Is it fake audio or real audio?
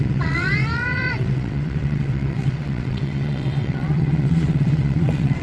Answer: fake